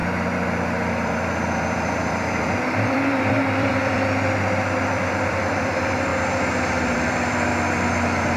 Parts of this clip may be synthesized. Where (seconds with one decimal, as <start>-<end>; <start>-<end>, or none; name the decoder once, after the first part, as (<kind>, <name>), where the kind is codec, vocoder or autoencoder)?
0.0-6.1 (vocoder, BigVGAN v2); 6.6-7.5